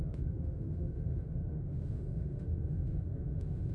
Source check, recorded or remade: remade